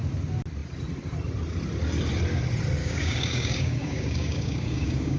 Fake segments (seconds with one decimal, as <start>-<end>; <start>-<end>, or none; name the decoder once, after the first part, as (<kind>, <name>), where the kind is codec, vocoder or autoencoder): 2.8-5.2 (codec, DAC)